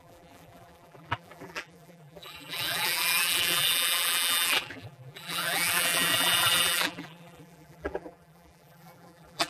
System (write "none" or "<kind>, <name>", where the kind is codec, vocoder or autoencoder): vocoder, BigVGAN v2